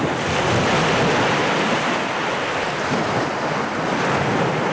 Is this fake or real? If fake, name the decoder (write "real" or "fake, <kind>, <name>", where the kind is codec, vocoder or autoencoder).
real